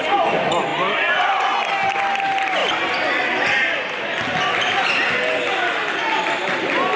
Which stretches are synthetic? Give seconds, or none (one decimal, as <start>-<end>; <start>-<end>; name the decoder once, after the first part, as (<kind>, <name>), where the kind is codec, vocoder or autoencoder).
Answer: none